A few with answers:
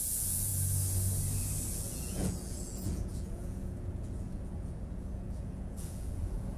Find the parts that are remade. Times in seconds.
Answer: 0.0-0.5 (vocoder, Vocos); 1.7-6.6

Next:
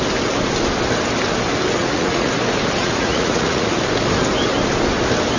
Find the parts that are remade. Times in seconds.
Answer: 1.8-2.3 (vocoder, Vocos); 2.8-3.8

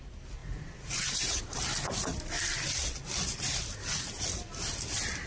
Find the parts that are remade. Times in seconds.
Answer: 0.4-1.4 (vocoder, Vocos)

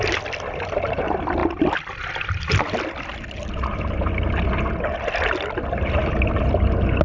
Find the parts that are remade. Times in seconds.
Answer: none

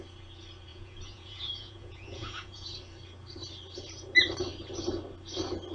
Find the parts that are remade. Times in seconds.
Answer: 0.7-2.7 (vocoder, Vocos)

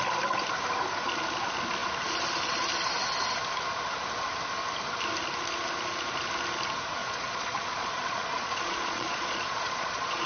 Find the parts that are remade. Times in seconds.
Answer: 7.0-10.3 (vocoder, Vocos)